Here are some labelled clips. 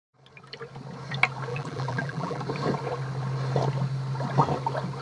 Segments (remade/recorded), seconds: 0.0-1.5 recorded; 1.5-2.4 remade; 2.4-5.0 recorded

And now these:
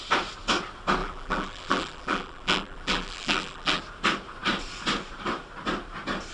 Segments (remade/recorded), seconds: 0.0-1.0 recorded; 1.0-3.8 remade; 3.8-6.3 recorded

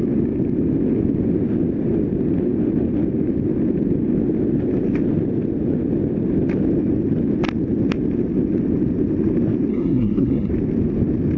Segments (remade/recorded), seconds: 0.0-9.7 recorded; 9.7-10.5 remade; 10.5-11.4 recorded